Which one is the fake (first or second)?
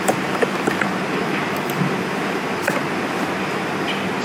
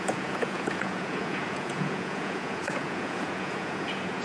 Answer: second